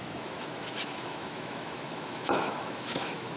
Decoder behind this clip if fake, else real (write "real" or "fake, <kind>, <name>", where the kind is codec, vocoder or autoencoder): fake, autoencoder, DAC-VAE